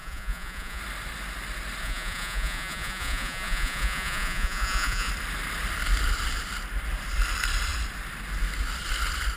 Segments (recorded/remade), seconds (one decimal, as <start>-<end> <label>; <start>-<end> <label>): 0.0-0.8 remade; 0.8-1.8 recorded; 1.8-5.1 remade; 5.1-9.4 recorded